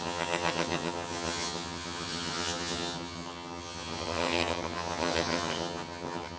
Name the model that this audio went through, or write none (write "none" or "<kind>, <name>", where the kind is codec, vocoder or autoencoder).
vocoder, HiFi-GAN